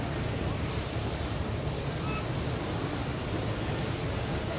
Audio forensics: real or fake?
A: real